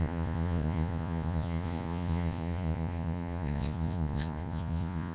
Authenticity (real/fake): fake